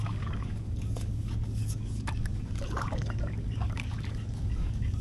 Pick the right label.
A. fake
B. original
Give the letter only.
A